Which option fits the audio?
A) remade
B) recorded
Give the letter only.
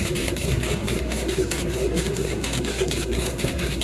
A